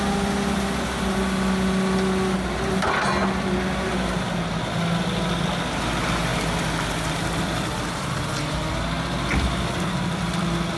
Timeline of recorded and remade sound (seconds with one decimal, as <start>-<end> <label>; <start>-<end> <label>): 0.0-10.8 recorded